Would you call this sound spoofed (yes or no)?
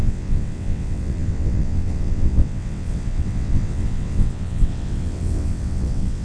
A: yes